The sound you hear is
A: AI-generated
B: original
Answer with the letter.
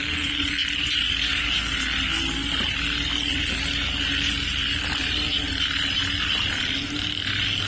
B